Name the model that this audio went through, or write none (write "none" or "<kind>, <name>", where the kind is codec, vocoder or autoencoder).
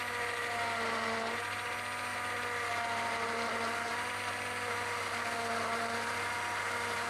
none